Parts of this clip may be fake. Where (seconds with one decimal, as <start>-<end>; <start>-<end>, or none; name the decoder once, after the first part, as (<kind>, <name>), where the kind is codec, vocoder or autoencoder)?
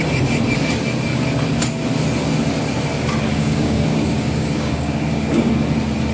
3.3-5.5 (codec, DAC)